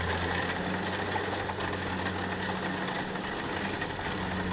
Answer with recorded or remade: recorded